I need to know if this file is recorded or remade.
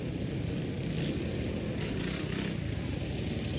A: recorded